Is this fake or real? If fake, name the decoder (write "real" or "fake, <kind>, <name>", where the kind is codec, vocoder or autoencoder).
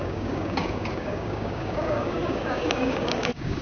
fake, codec, DAC